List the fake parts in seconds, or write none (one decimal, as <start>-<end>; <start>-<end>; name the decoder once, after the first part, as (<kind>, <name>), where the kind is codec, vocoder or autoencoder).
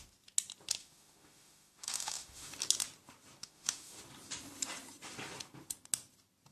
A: 0.8-2.5 (autoencoder, DAC-VAE); 3.4-4.0